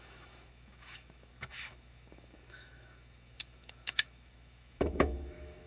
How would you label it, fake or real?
fake